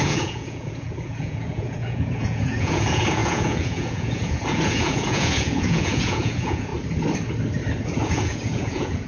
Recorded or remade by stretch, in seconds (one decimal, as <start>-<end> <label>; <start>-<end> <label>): 0.0-6.7 remade; 6.7-7.8 recorded; 7.8-9.1 remade

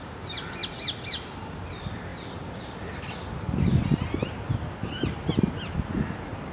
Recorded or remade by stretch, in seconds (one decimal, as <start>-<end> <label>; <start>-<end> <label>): 0.0-4.8 recorded; 4.8-5.3 remade; 5.3-6.5 recorded

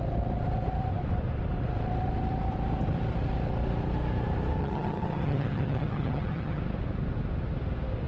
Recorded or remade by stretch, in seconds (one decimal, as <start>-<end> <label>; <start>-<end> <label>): 0.0-4.6 recorded; 4.6-6.6 remade; 6.6-8.1 recorded

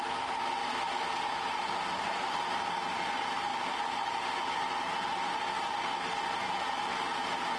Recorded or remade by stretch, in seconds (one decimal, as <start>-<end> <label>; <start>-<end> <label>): 0.0-0.6 recorded; 0.6-2.4 remade; 2.4-7.6 recorded

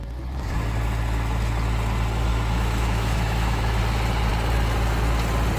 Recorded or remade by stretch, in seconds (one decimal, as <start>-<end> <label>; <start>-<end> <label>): 0.0-2.3 recorded; 2.3-3.8 remade; 3.8-5.6 recorded

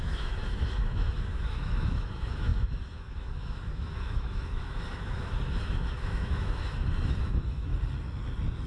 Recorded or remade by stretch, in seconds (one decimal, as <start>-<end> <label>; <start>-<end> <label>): 0.0-7.7 remade; 7.7-8.7 recorded

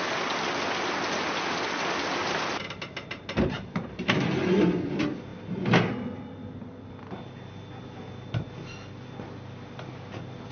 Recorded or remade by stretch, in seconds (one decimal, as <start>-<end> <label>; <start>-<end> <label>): 0.0-2.2 recorded; 2.2-4.4 remade; 4.4-10.5 recorded

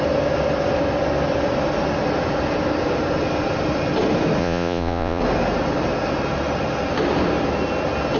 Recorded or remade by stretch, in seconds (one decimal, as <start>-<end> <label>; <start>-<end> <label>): 0.0-4.4 recorded; 4.4-5.2 remade; 5.2-8.2 recorded